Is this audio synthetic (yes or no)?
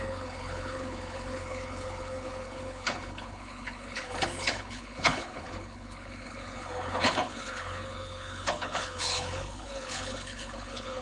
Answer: yes